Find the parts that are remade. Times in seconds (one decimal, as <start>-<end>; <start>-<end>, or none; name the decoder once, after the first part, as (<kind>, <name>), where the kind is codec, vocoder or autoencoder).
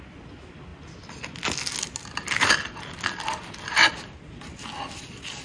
none